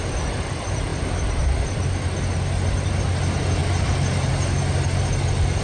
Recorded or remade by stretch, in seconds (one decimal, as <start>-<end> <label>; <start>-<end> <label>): 0.0-5.6 recorded